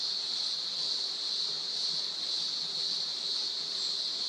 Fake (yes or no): no